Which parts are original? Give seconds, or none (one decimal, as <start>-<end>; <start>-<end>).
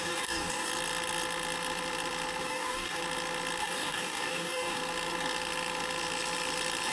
0.7-2.4; 3.0-3.6; 4.8-6.9